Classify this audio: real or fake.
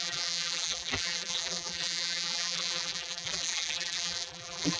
fake